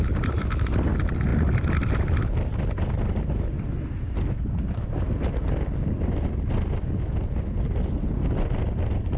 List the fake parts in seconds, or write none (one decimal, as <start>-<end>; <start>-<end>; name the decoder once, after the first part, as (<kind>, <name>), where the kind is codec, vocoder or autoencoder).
1.3-1.9 (vocoder, BigVGAN v2)